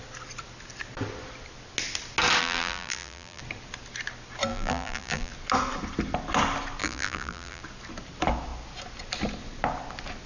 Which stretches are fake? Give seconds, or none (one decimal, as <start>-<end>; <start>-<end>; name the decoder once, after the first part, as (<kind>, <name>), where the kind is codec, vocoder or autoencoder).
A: 2.4-3.4 (vocoder, BigVGAN v2); 4.5-5.3; 6.8-7.6